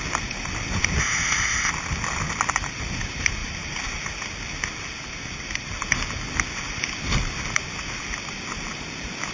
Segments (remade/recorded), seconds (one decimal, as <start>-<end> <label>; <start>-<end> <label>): 0.0-1.0 recorded; 1.0-1.7 remade; 1.7-9.3 recorded

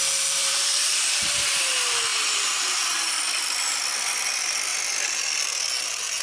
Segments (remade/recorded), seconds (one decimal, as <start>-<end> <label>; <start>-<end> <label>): 0.0-0.4 recorded; 0.4-1.6 remade; 1.6-2.1 recorded; 2.1-3.1 remade; 3.1-6.2 recorded

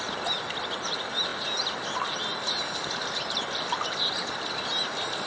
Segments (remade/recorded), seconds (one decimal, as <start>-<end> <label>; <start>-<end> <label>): 0.0-5.3 recorded

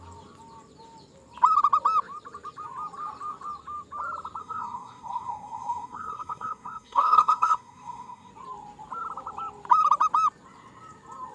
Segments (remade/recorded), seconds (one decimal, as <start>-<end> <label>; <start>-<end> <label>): 0.0-4.4 recorded; 4.4-8.3 remade; 8.3-11.3 recorded

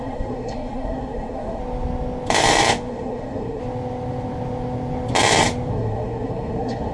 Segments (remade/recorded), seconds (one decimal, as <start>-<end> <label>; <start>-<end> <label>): 0.0-1.6 remade; 1.6-2.9 recorded; 2.9-3.6 remade; 3.6-5.7 recorded; 5.7-6.9 remade

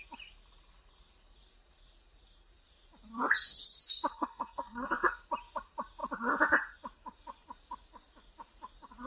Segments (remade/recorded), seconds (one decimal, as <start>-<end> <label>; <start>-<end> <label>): 0.0-4.1 recorded; 4.1-5.2 remade; 5.2-9.1 recorded

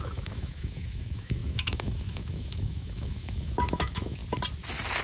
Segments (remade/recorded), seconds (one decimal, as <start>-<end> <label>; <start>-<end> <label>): 0.0-4.2 remade; 4.2-5.0 recorded